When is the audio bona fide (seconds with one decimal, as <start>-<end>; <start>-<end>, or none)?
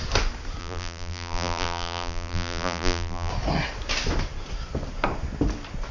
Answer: 0.0-0.6; 3.3-5.9